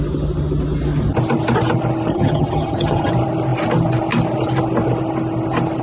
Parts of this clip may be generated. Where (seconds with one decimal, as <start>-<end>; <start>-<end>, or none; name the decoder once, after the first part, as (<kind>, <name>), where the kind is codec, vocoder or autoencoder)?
2.1-3.1 (vocoder, HiFi-GAN)